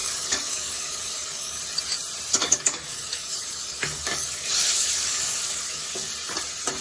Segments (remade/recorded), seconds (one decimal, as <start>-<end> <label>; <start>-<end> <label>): 0.0-1.6 remade; 1.6-2.3 recorded; 2.3-6.1 remade; 6.1-6.8 recorded